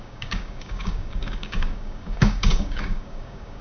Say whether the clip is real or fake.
fake